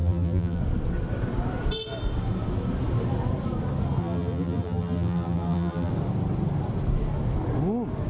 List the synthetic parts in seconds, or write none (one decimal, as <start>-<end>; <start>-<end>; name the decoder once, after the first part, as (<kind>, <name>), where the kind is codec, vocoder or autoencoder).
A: 0.0-0.6 (vocoder, BigVGAN v2); 4.0-5.9